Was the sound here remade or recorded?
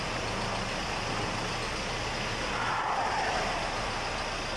recorded